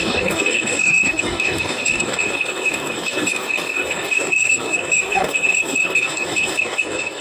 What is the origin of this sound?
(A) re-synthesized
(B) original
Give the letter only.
A